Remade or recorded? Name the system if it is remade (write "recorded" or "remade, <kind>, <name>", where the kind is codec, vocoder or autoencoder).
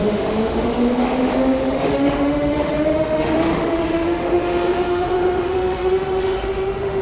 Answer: remade, autoencoder, DAC-VAE